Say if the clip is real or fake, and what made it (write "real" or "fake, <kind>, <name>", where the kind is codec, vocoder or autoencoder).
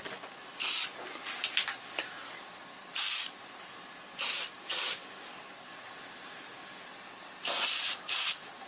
real